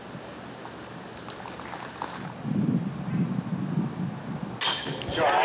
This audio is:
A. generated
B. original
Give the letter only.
B